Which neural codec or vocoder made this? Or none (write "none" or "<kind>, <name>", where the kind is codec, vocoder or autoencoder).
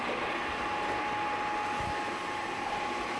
none